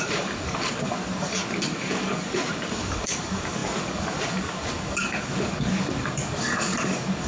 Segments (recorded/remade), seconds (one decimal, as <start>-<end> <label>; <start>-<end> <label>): 0.0-7.3 remade